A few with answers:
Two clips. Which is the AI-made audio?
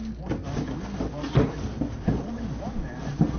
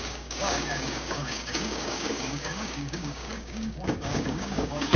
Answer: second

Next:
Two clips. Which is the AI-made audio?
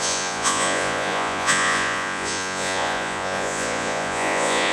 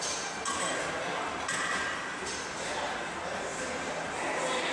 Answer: first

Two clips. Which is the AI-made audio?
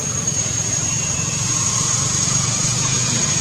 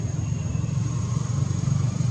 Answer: first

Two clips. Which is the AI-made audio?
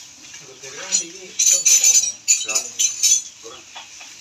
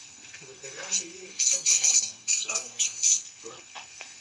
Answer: second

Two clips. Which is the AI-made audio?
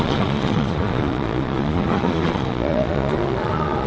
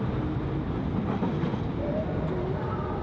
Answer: first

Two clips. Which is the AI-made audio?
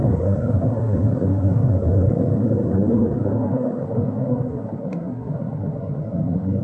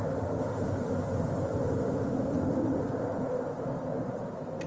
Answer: first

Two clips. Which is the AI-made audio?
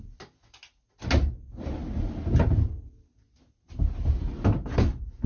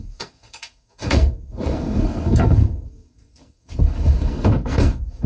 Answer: second